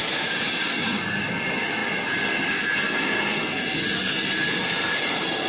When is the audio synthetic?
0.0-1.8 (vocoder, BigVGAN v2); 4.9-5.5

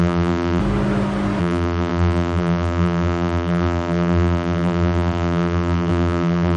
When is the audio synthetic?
0.0-0.6 (vocoder, BigVGAN v2); 1.4-6.6